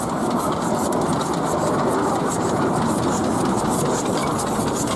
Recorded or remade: recorded